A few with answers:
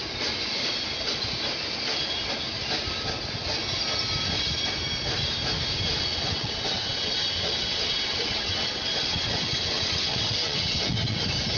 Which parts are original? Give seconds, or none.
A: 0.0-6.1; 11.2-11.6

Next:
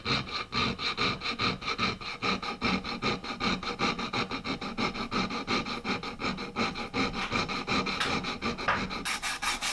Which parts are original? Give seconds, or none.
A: 0.0-9.7

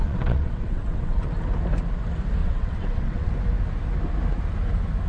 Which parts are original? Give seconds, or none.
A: 1.3-2.4; 3.3-5.1

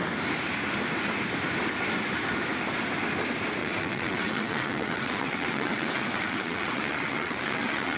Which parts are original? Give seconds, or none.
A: 0.0-3.6

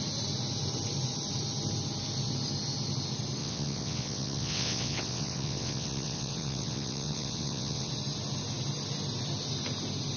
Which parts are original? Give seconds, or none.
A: 0.0-3.4; 7.9-10.2

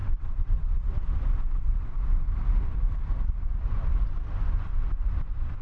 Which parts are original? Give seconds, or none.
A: 1.2-5.6

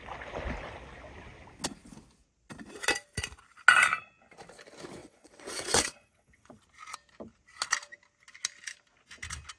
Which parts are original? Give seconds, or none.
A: 0.0-5.0; 6.6-9.6